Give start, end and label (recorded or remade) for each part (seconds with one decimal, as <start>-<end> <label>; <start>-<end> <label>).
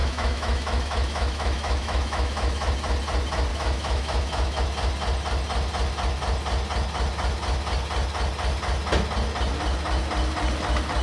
0.0-2.7 remade; 2.7-3.5 recorded; 3.5-4.6 remade; 4.6-11.0 recorded